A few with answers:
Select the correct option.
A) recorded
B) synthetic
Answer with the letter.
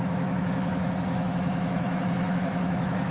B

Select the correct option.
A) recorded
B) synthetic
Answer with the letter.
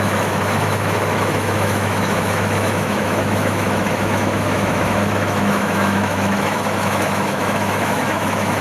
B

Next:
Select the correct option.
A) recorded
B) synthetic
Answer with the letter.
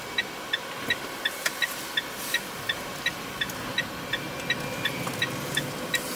A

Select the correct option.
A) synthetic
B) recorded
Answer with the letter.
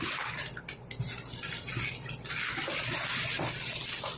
B